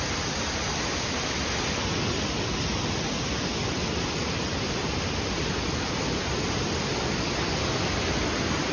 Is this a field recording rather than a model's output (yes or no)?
yes